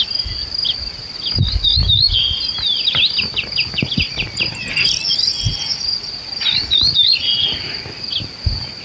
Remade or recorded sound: recorded